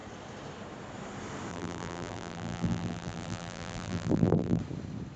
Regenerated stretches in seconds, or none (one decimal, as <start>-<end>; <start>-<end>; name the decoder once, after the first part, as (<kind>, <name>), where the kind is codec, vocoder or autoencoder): 1.5-4.6 (vocoder, BigVGAN v2)